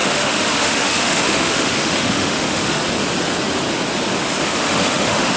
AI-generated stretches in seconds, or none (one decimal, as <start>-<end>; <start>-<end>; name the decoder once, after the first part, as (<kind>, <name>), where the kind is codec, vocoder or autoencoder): 0.0-2.8 (autoencoder, DAC-VAE); 4.4-5.4